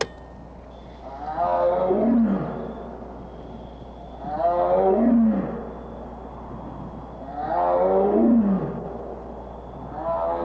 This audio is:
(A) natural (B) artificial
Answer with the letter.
A